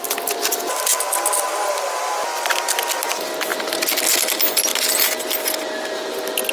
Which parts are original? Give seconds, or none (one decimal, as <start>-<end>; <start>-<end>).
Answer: 0.0-6.5